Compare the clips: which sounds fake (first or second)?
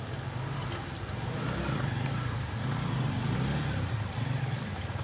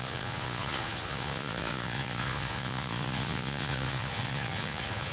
second